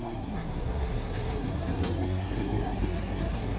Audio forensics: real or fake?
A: fake